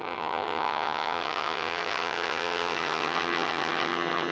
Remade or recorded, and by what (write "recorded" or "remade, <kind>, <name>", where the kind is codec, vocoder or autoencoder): remade, vocoder, HiFi-GAN